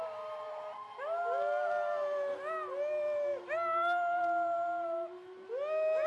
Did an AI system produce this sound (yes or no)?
no